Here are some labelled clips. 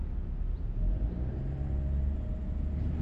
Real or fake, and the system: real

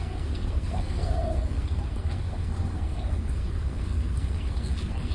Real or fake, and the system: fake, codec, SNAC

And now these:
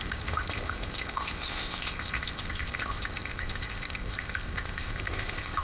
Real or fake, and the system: fake, codec, ZipCodec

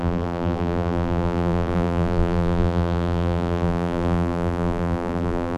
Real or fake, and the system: fake, vocoder, BigVGAN v2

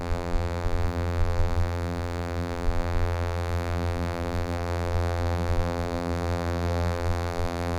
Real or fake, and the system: fake, vocoder, BigVGAN v2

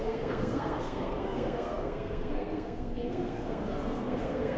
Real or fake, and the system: fake, codec, SNAC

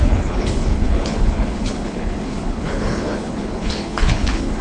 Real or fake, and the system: fake, codec, HILCodec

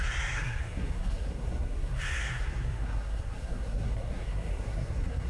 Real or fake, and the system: fake, codec, SNAC